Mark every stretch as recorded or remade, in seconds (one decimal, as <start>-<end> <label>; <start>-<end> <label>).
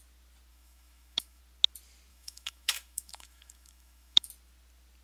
0.0-0.5 recorded; 0.5-1.4 remade; 1.4-2.1 recorded; 2.1-4.3 remade; 4.3-5.0 recorded